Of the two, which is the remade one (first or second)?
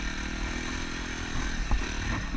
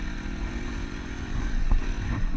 second